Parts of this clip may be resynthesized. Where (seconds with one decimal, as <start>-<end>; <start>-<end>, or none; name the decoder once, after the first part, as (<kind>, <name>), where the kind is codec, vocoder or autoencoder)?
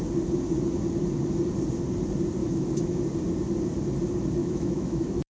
2.4-3.0 (autoencoder, DAC-VAE); 4.4-5.3